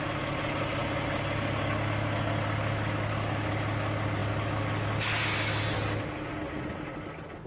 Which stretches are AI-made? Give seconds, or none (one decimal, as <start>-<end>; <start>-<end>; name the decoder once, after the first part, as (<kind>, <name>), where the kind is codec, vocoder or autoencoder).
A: none